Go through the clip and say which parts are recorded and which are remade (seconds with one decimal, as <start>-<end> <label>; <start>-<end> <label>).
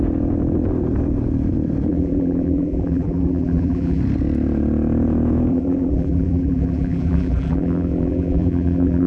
0.0-1.9 recorded; 1.9-4.0 remade; 4.0-5.5 recorded; 5.5-9.1 remade